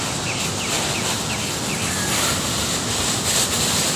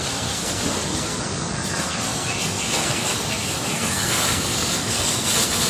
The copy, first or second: second